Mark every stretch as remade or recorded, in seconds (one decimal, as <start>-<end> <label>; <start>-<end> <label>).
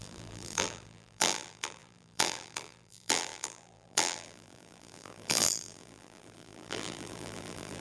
0.0-7.8 remade